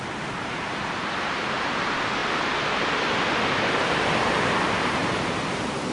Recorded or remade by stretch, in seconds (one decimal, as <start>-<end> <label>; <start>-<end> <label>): 0.0-2.2 remade; 2.2-3.8 recorded; 3.8-5.0 remade; 5.0-5.5 recorded; 5.5-5.9 remade